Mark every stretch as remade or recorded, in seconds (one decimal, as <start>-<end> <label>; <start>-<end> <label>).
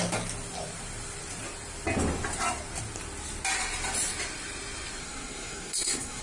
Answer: 0.0-5.0 recorded; 5.0-6.2 remade